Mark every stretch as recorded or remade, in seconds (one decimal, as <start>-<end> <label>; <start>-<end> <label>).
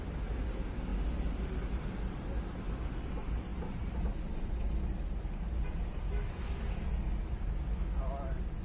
0.0-8.6 recorded